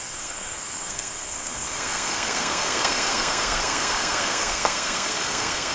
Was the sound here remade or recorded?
remade